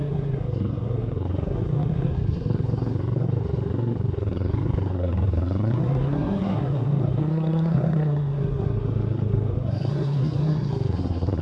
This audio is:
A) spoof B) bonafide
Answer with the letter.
A